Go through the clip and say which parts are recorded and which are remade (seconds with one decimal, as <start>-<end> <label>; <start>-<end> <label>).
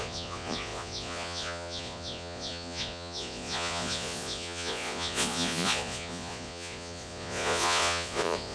0.0-8.5 remade